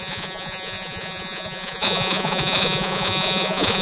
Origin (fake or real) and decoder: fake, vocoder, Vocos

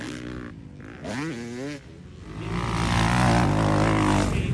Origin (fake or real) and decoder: real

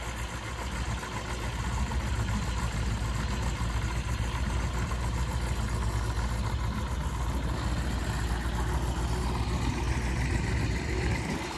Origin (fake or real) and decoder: real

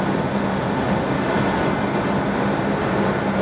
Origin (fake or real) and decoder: real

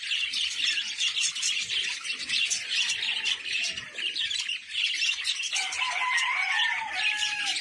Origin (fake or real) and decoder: real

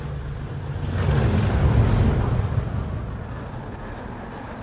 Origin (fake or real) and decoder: real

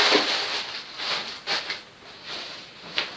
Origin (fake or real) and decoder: real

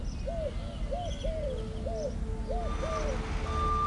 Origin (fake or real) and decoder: real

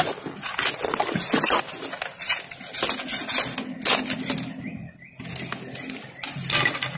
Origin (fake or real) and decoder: real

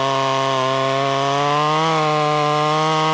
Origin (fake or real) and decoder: real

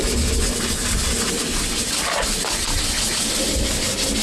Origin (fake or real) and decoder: real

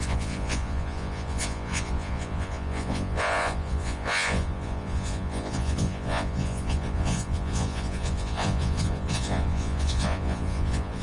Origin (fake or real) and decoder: fake, vocoder, Vocos